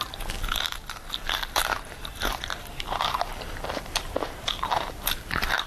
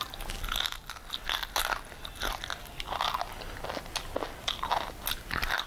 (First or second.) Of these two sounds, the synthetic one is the first